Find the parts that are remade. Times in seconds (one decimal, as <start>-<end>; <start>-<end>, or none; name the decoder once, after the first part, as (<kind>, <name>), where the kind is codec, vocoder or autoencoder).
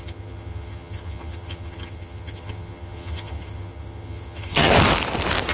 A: 0.0-4.7 (vocoder, HiFi-GAN)